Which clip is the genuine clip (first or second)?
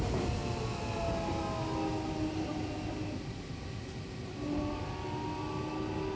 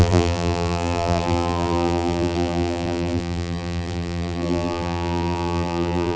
first